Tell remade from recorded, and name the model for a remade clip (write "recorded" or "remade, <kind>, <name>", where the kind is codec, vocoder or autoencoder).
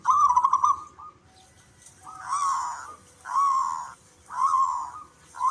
recorded